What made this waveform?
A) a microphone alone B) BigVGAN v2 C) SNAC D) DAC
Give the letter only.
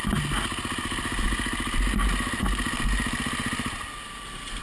A